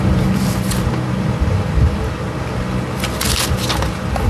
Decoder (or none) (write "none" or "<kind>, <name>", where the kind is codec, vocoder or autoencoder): none